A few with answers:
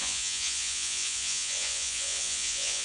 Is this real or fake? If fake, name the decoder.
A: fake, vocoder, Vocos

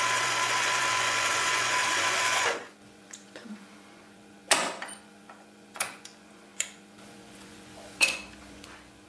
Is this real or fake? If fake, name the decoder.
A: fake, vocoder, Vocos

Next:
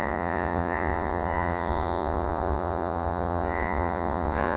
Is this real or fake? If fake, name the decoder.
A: fake, vocoder, Vocos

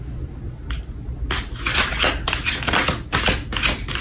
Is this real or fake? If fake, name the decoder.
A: real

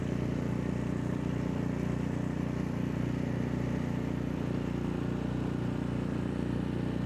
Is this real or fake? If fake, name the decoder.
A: real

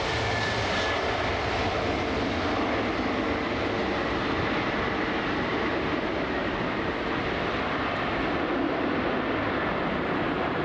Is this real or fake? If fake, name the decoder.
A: real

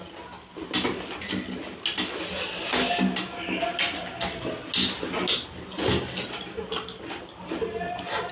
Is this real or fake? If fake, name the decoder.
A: real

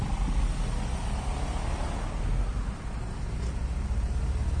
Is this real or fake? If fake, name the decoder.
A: real